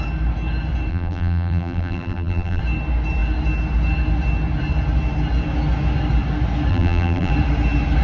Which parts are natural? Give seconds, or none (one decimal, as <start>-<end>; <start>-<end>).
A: 0.0-0.9; 2.6-6.7; 7.3-8.0